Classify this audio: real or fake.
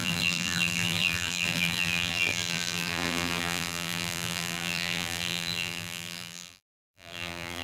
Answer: fake